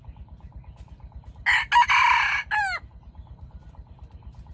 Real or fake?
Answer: real